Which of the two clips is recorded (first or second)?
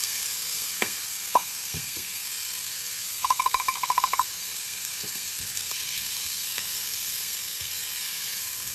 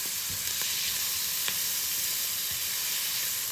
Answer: second